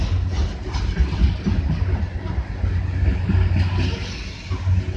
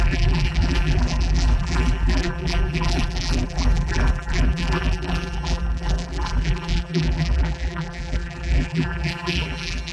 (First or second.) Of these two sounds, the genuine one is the first